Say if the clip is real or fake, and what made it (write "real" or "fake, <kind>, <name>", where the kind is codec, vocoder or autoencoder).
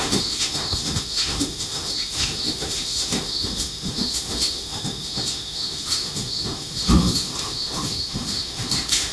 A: fake, autoencoder, DAC-VAE